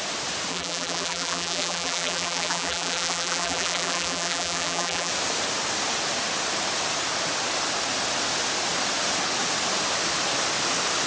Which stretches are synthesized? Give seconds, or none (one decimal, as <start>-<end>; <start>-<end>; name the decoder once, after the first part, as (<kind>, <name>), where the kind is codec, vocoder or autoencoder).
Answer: 0.5-5.1 (vocoder, BigVGAN v2)